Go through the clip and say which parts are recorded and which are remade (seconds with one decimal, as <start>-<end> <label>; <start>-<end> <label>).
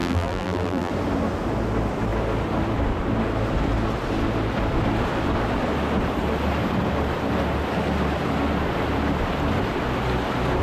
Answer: 0.0-0.9 remade; 0.9-10.6 recorded